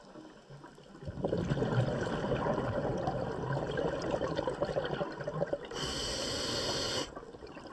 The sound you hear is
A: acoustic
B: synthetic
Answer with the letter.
A